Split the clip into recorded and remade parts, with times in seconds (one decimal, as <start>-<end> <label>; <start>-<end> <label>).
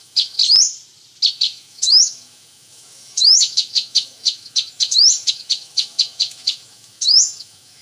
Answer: 0.0-0.4 remade; 0.4-1.3 recorded; 1.3-7.8 remade